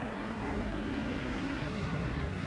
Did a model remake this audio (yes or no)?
yes